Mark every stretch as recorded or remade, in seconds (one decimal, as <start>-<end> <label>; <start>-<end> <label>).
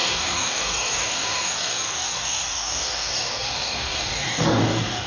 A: 0.0-5.1 remade